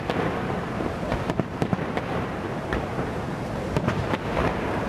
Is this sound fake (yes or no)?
yes